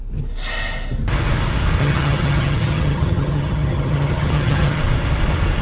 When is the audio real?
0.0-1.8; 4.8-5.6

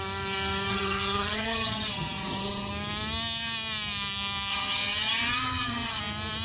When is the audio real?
0.0-0.7; 2.7-4.5; 6.0-6.4

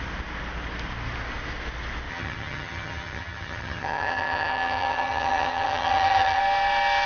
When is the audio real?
0.0-2.1; 6.4-7.1

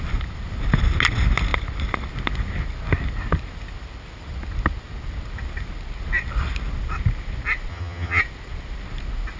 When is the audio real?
0.0-7.7; 8.2-9.4

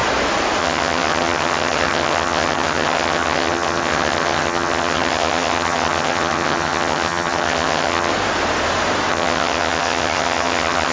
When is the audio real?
0.0-0.6; 8.1-9.1